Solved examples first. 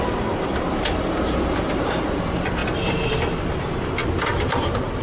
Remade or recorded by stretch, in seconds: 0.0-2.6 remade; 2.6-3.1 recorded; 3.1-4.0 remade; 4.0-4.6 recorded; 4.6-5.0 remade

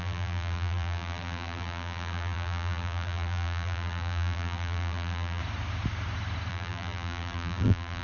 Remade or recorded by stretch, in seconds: 0.0-5.4 remade; 5.4-6.5 recorded; 6.5-8.0 remade

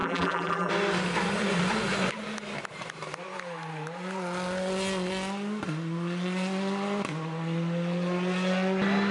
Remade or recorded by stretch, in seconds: 0.0-0.7 remade; 0.7-9.1 recorded

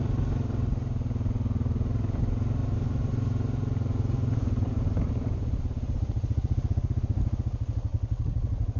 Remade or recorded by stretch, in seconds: 0.0-2.6 recorded; 2.6-7.2 remade; 7.2-8.8 recorded